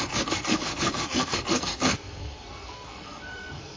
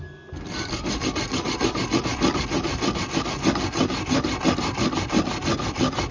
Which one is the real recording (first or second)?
second